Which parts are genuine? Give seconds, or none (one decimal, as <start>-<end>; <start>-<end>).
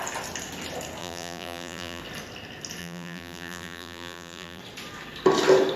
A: 0.0-1.0; 2.0-2.8; 4.6-5.8